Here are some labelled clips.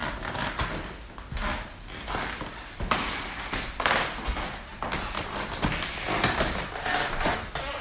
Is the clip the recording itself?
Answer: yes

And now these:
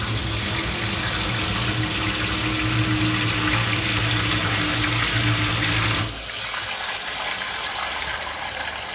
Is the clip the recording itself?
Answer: yes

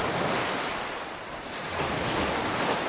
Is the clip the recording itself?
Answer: yes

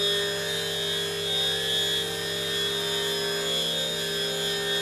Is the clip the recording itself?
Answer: yes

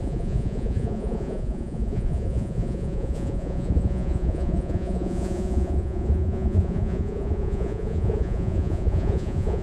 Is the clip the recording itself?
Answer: no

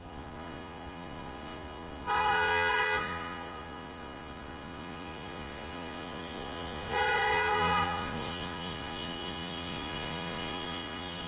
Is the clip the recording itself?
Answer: no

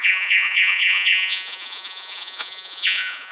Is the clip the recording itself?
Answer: no